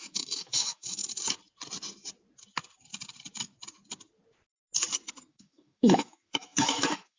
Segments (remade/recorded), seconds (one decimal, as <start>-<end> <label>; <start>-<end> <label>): 0.0-1.0 remade; 1.0-5.3 recorded; 5.3-7.2 remade